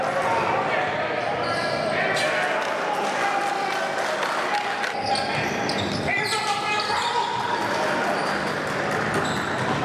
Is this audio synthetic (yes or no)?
no